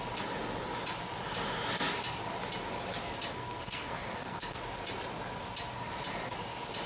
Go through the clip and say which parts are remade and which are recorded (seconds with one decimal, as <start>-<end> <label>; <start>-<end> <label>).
0.0-3.3 recorded; 3.3-4.6 remade; 4.6-6.9 recorded